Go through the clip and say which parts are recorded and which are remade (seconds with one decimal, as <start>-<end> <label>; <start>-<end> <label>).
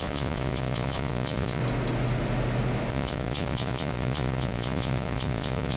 0.0-1.6 remade; 1.6-2.9 recorded; 2.9-5.8 remade